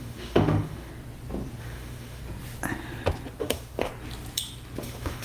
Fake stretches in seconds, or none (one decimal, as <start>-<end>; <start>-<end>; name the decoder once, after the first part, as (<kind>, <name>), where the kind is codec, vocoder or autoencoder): 0.0-0.9 (autoencoder, DAC-VAE); 1.6-2.2; 3.4-3.9; 4.8-5.2